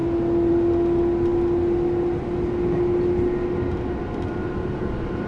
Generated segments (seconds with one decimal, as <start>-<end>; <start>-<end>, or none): none